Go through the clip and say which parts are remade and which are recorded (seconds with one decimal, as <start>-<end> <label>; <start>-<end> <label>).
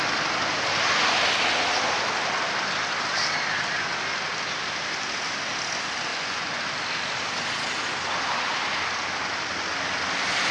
0.0-6.1 recorded; 6.1-6.6 remade; 6.6-10.5 recorded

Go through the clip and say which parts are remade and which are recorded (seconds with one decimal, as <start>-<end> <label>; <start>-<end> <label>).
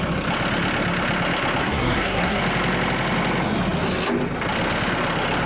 0.0-1.6 recorded; 1.6-2.4 remade; 2.4-5.5 recorded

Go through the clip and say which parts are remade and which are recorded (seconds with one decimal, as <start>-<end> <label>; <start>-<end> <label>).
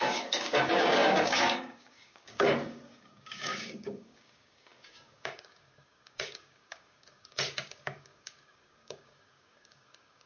0.0-10.3 remade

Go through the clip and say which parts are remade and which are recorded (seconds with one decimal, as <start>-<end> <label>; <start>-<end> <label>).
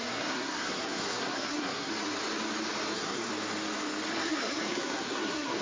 0.0-1.9 remade; 1.9-2.9 recorded; 2.9-3.3 remade; 3.3-4.1 recorded; 4.1-5.6 remade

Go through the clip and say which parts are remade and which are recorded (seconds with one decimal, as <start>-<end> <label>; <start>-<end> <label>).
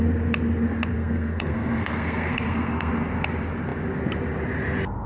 0.0-0.9 recorded; 0.9-2.9 remade; 2.9-5.1 recorded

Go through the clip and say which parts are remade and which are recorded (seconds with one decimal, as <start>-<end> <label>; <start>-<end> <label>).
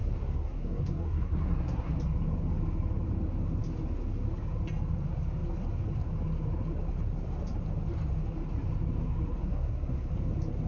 0.0-1.9 remade; 1.9-9.4 recorded; 9.4-10.1 remade; 10.1-10.7 recorded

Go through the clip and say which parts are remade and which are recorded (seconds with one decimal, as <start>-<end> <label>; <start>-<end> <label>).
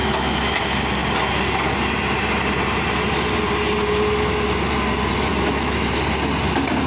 0.0-0.6 remade; 0.6-5.3 recorded; 5.3-5.9 remade; 5.9-6.9 recorded